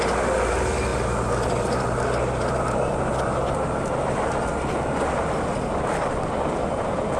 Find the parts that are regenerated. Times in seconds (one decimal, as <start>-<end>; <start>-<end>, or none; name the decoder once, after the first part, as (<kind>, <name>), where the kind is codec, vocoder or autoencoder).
none